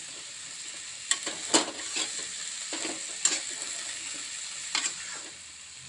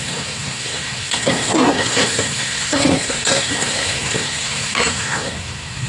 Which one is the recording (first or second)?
first